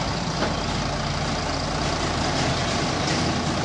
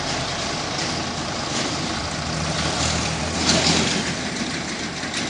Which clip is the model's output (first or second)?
second